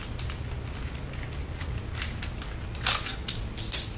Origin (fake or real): real